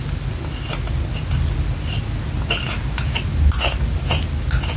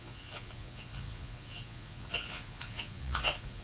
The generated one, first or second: second